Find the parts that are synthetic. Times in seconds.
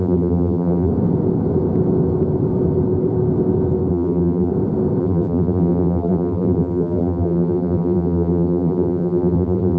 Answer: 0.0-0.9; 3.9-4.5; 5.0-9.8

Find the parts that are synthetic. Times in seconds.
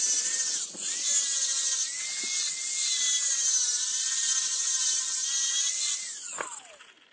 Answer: none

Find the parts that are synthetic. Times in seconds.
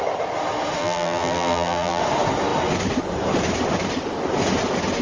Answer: 0.8-2.0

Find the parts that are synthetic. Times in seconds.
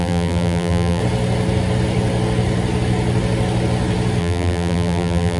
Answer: 0.0-1.0; 4.2-5.4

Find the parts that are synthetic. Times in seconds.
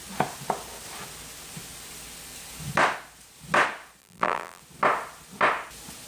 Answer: 4.0-4.6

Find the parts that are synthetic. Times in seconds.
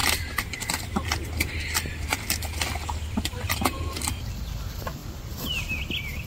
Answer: 0.0-0.6; 3.3-4.0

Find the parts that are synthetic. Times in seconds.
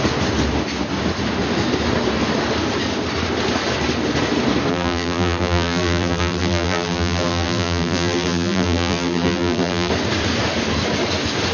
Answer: 4.7-9.9